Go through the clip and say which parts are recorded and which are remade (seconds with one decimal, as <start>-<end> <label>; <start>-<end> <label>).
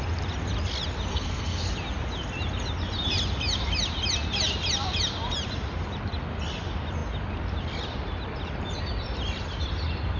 0.0-1.1 recorded; 1.1-1.6 remade; 1.6-10.2 recorded